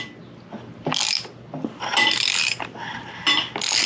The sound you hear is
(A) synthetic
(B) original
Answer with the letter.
B